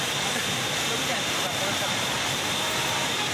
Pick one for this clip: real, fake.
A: fake